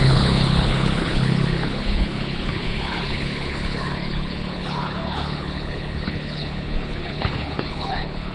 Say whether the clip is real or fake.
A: fake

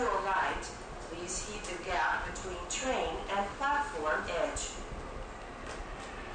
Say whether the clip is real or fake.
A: real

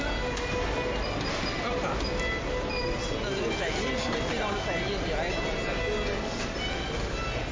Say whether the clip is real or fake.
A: real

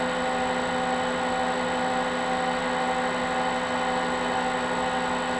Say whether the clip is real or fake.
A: real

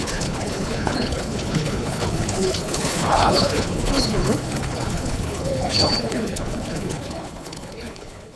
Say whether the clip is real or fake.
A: fake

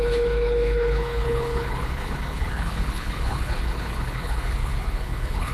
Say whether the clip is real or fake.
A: fake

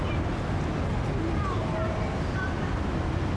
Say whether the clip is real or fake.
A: real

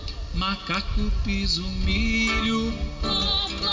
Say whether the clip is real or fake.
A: real